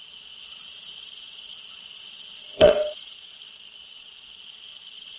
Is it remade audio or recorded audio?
remade